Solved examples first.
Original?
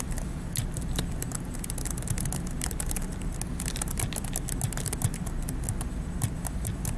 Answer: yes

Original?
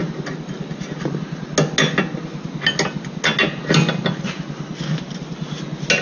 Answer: yes